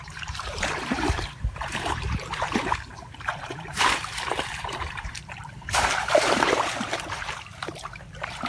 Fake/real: fake